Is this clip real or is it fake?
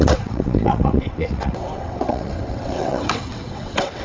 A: fake